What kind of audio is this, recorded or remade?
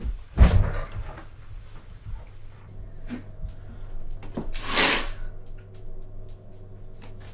recorded